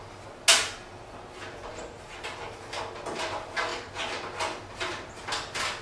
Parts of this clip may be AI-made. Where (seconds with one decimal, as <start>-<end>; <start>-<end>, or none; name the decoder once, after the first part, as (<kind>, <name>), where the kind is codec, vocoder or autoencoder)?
1.7-2.8 (vocoder, BigVGAN v2)